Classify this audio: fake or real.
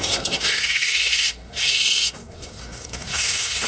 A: fake